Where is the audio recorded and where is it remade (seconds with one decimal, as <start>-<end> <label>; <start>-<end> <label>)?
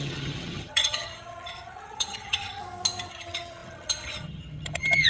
0.0-2.6 remade; 2.6-3.1 recorded; 3.1-5.1 remade